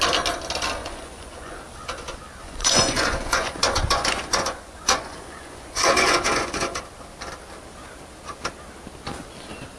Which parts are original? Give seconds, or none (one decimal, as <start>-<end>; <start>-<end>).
0.0-0.8; 1.6-2.4; 6.8-9.8